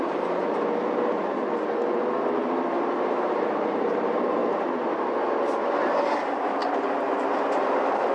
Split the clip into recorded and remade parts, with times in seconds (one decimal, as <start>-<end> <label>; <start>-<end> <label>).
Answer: 0.0-0.4 remade; 0.4-1.2 recorded; 1.2-4.4 remade; 4.4-6.0 recorded; 6.0-8.1 remade